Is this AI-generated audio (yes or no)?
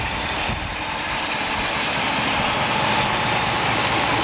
no